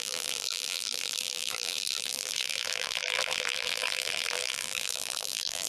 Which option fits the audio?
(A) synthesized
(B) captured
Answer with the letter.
A